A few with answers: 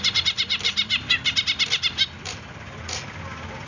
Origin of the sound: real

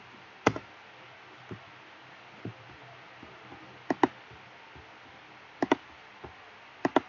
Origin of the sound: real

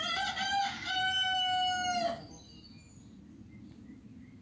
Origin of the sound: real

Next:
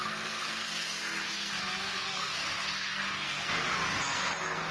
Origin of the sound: fake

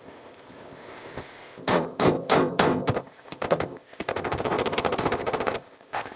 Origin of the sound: fake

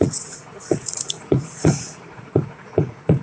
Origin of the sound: fake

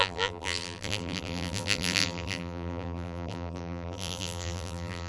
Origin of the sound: fake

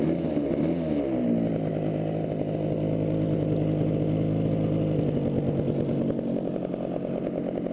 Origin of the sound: real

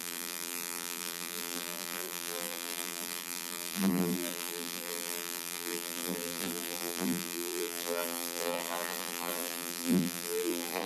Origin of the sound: fake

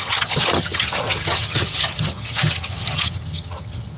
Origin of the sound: fake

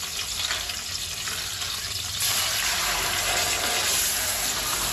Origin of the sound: real